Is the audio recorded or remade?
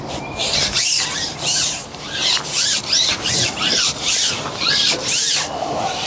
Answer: remade